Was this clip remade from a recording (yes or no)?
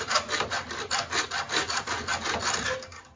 no